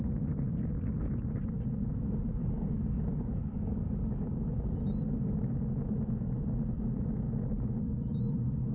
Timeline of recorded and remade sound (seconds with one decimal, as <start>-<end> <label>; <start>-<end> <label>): 0.0-2.4 recorded; 2.4-4.4 remade; 4.4-8.7 recorded